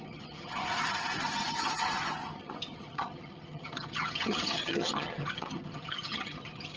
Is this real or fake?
fake